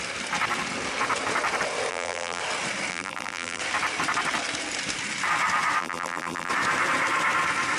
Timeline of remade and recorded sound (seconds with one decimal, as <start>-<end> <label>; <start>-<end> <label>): 0.0-1.9 recorded; 1.9-2.4 remade; 2.4-2.9 recorded; 2.9-3.6 remade; 3.6-5.8 recorded; 5.8-6.5 remade; 6.5-7.8 recorded